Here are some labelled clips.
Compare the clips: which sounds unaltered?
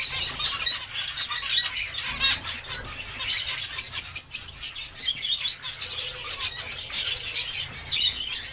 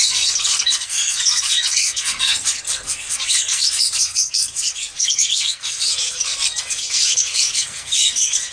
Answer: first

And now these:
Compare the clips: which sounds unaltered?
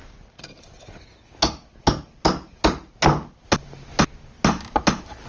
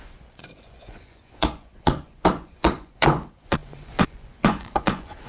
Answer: first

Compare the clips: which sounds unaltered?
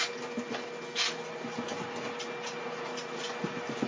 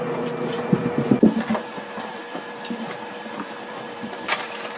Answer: first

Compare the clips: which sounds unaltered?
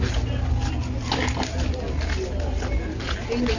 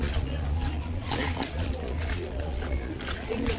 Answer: first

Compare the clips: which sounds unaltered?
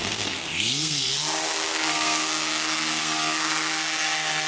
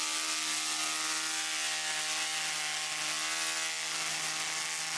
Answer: second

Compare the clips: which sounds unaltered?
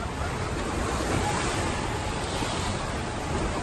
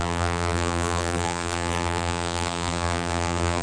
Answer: first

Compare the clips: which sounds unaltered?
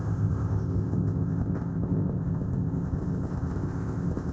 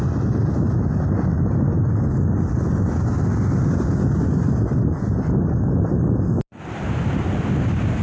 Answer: second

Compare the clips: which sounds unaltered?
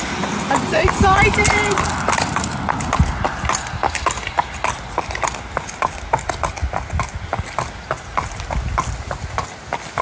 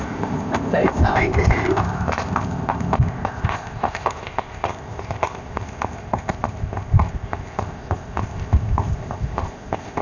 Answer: first